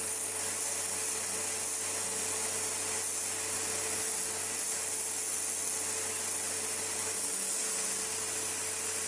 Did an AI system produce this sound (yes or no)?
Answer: no